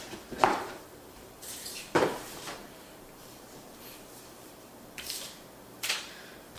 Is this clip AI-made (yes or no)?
yes